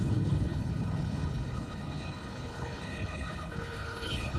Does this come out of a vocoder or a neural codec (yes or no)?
yes